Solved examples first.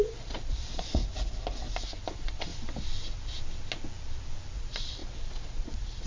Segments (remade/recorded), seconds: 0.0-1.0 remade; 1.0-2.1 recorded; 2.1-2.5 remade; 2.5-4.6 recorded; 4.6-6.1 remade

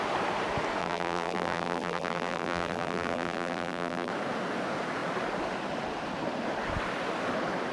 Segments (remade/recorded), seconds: 0.0-0.8 recorded; 0.8-4.1 remade; 4.1-7.7 recorded